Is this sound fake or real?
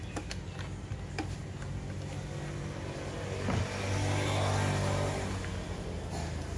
real